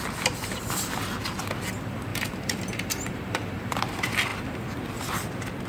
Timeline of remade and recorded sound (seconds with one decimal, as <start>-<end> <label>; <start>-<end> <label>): 0.0-2.1 recorded; 2.1-3.8 remade; 3.8-5.7 recorded